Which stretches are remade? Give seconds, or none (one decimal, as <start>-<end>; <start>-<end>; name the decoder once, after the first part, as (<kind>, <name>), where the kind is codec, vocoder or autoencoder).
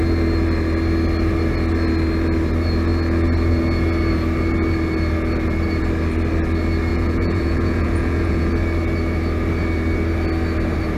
6.9-8.5 (vocoder, Vocos)